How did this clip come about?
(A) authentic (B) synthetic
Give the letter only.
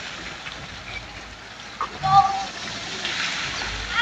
A